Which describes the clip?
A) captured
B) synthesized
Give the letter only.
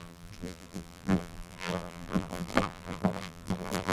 B